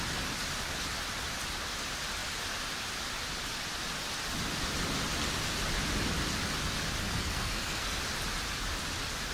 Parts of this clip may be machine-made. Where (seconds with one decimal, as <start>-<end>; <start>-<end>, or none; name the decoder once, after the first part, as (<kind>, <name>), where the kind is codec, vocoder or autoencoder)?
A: 7.0-8.0 (codec, SNAC)